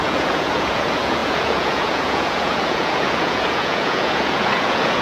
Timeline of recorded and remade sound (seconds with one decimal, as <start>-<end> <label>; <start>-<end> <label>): 0.0-5.0 remade